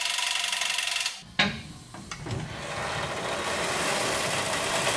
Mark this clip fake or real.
real